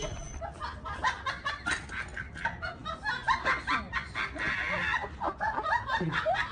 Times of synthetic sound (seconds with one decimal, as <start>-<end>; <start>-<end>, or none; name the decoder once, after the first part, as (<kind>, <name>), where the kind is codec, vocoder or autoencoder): none